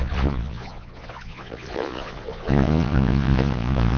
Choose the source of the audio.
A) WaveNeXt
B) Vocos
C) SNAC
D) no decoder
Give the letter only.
B